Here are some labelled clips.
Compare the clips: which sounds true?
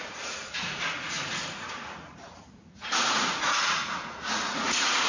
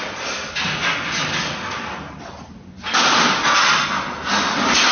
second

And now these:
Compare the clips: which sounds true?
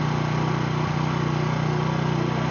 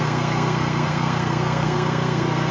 first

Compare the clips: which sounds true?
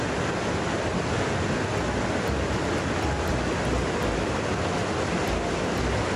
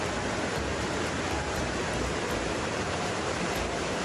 first